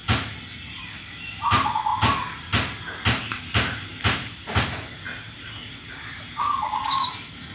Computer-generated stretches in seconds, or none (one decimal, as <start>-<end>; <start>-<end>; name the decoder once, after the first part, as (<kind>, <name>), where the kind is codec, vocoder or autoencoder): none